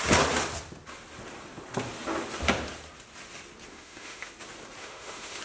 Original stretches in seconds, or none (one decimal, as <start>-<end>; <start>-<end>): 0.0-3.7; 4.3-4.8